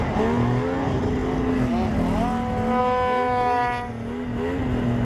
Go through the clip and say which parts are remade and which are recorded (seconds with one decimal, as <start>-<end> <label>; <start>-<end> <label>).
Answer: 0.0-5.0 recorded